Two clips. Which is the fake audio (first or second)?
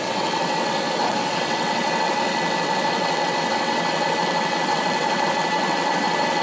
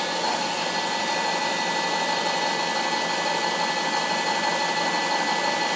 first